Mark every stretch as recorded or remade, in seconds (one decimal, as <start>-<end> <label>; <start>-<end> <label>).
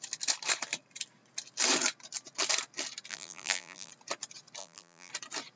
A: 0.0-3.1 recorded; 3.1-3.9 remade; 3.9-4.6 recorded; 4.6-5.1 remade; 5.1-5.6 recorded